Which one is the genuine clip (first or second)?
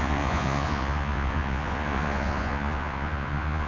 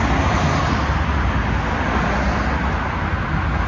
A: second